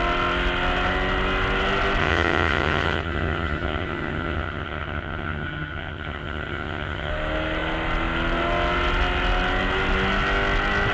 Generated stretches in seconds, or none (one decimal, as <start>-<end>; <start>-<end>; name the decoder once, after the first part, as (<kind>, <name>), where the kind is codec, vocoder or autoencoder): 2.0-7.1 (vocoder, HiFi-GAN)